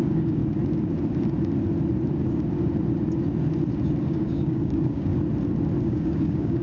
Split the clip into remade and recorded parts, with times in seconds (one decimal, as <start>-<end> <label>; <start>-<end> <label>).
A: 0.0-0.4 remade; 0.4-4.0 recorded; 4.0-5.1 remade; 5.1-5.8 recorded; 5.8-6.6 remade